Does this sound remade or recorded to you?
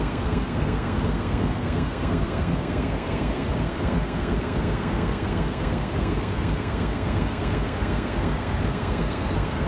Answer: remade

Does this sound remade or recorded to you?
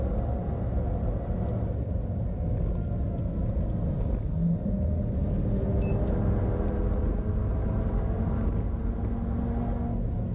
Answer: recorded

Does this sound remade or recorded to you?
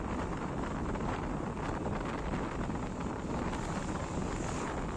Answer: remade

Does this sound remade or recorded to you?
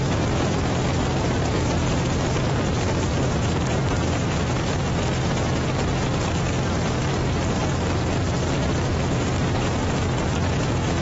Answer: remade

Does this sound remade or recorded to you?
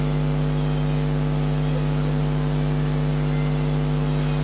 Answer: recorded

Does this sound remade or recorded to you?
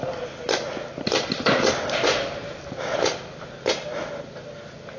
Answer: recorded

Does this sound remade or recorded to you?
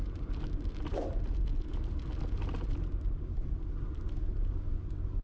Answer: recorded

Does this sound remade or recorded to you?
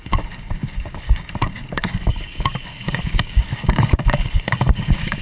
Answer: remade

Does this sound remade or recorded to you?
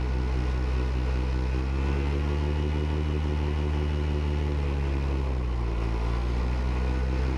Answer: recorded